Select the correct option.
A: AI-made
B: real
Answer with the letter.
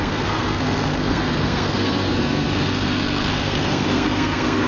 A